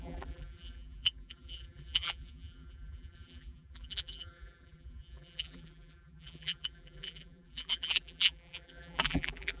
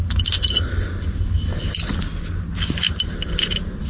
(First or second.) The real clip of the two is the second